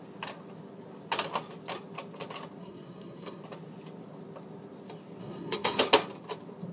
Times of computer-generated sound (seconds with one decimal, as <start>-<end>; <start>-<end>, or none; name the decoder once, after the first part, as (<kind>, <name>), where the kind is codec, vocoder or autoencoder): 2.6-3.4 (codec, SNAC); 5.2-5.8